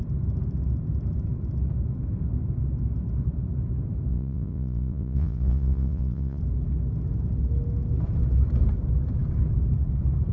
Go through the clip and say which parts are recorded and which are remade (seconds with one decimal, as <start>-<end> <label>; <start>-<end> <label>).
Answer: 0.0-4.1 recorded; 4.1-6.4 remade; 6.4-10.3 recorded